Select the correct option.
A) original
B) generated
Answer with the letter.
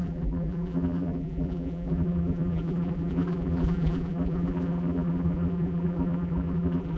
B